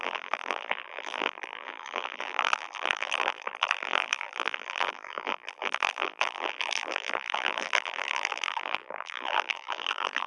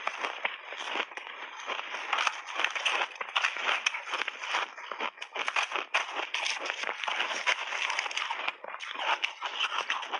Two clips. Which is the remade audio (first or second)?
first